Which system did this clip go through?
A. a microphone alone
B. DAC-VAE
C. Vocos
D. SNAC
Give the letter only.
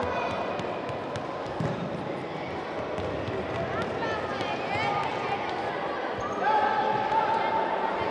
A